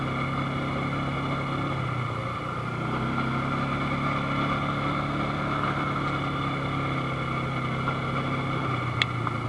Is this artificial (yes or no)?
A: no